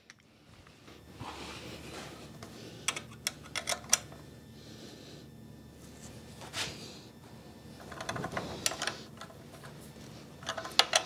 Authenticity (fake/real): real